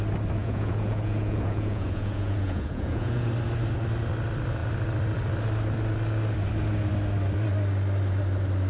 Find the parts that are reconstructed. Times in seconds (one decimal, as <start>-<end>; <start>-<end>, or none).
0.4-3.3